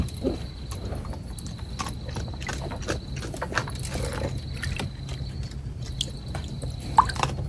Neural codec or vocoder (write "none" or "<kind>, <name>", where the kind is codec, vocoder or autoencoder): none